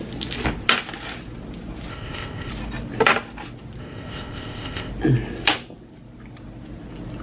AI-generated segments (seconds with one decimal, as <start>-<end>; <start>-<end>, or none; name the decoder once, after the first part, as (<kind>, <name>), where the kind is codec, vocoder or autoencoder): 1.9-2.5 (codec, ZipCodec); 3.8-4.9